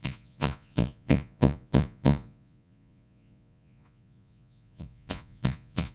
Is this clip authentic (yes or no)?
no